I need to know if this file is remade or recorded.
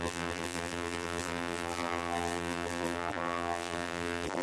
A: remade